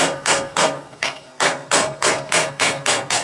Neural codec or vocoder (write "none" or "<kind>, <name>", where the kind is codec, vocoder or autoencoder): codec, SNAC